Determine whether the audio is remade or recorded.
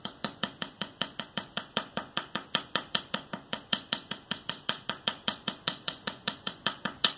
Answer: remade